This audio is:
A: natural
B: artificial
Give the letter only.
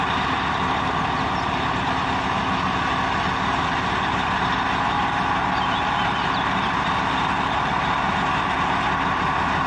A